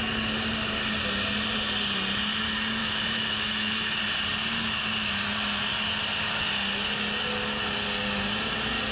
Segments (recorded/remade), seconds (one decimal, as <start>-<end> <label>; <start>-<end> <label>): 0.0-2.8 recorded; 2.8-4.0 remade; 4.0-8.9 recorded